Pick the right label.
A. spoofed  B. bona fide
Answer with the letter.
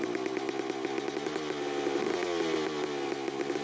B